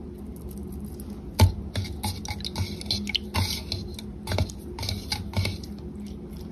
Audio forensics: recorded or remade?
recorded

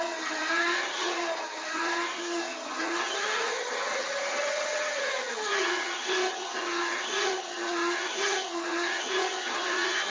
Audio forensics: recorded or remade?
remade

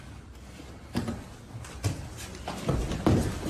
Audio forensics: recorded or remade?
recorded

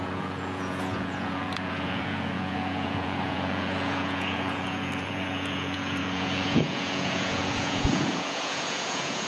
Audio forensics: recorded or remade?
remade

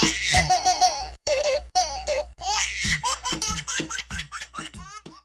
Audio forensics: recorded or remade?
remade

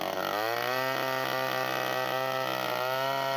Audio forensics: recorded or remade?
recorded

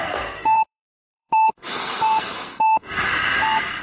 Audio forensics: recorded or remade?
remade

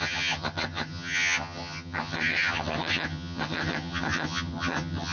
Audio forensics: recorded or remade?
remade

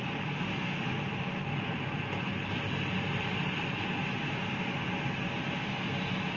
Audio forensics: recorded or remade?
recorded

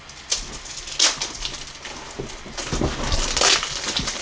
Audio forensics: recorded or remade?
recorded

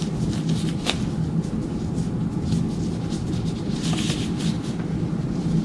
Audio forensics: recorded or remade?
recorded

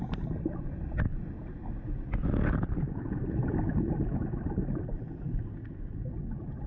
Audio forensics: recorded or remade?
recorded